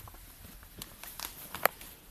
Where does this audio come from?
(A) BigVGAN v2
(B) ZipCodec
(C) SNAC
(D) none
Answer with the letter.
A